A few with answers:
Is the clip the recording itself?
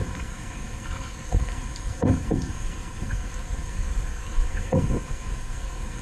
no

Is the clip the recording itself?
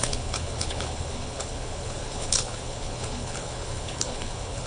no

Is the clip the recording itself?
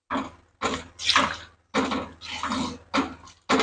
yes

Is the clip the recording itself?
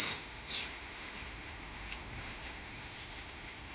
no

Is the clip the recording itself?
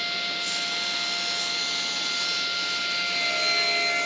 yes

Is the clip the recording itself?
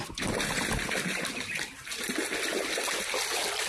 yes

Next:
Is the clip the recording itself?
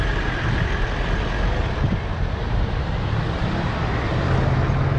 yes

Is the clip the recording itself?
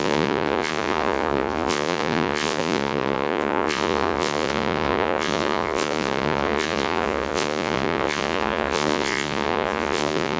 no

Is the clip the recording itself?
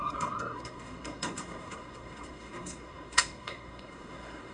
no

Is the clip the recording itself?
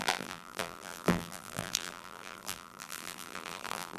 no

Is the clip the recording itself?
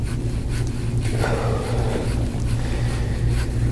yes